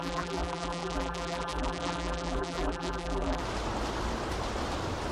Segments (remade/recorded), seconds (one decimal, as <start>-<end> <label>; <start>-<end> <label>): 0.0-3.4 remade; 3.4-5.1 recorded